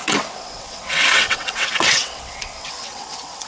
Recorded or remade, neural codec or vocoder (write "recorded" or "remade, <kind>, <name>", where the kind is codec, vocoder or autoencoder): remade, vocoder, WaveNeXt